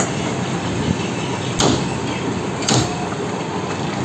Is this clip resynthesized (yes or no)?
no